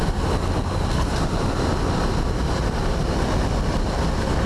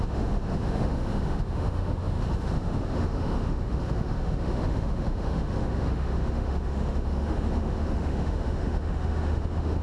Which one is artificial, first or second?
second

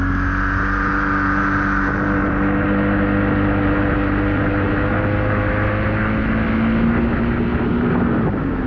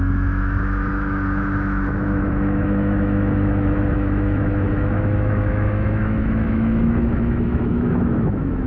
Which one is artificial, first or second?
second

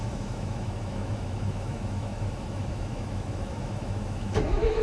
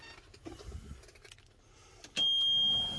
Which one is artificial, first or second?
first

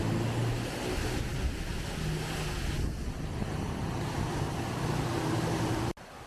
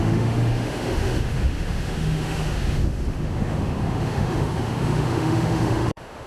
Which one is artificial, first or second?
second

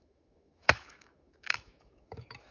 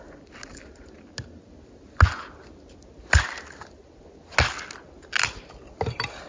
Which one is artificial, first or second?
first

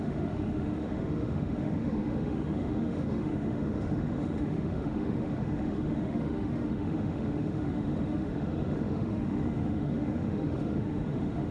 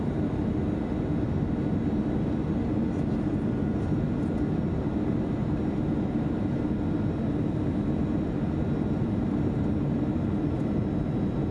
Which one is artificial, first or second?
first